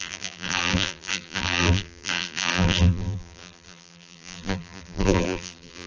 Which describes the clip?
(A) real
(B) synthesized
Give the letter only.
B